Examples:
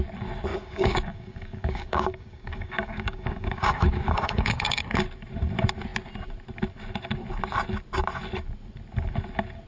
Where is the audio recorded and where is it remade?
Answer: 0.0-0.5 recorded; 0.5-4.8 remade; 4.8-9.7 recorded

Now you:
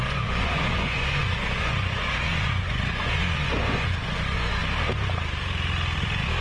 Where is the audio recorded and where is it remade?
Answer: 0.0-4.6 remade; 4.6-6.4 recorded

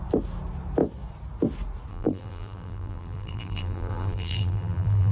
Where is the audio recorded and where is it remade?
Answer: 0.0-1.9 recorded; 1.9-5.1 remade

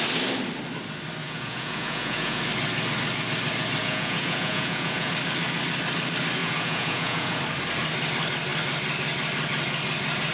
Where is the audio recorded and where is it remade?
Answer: 0.0-1.2 recorded; 1.2-2.4 remade; 2.4-3.8 recorded; 3.8-5.1 remade; 5.1-6.4 recorded; 6.4-7.4 remade; 7.4-10.3 recorded

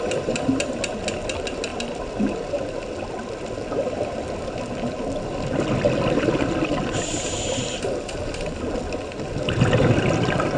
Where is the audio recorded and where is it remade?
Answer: 0.0-10.6 recorded